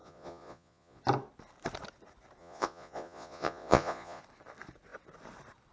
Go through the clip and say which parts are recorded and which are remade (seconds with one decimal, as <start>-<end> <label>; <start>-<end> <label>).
0.0-1.0 remade; 1.0-2.4 recorded; 2.4-4.2 remade; 4.2-5.7 recorded